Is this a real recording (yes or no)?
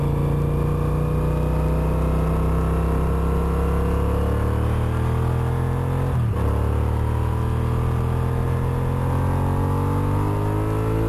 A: yes